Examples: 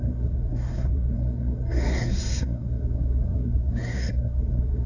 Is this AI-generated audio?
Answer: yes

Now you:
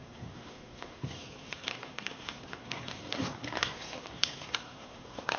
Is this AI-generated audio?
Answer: yes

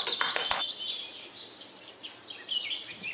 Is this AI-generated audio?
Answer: no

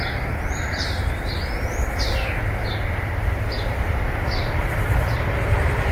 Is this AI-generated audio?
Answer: yes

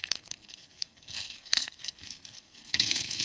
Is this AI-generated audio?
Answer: yes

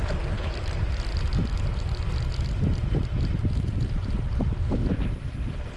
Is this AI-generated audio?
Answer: no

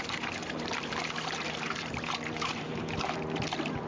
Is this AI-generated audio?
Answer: yes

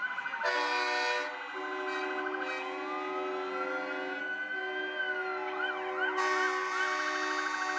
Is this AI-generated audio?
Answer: no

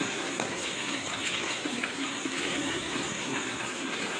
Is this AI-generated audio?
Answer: yes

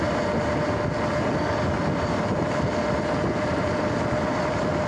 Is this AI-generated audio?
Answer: no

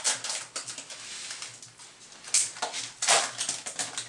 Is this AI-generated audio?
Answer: no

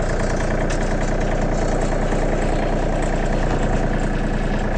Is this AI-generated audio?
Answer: no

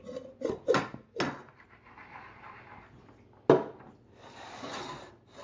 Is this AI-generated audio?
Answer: no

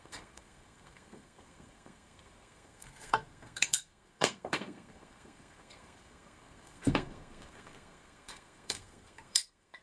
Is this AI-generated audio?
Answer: yes